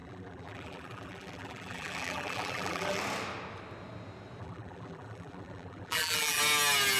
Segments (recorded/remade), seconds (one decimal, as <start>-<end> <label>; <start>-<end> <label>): 0.0-3.0 remade; 3.0-4.4 recorded; 4.4-6.4 remade; 6.4-7.0 recorded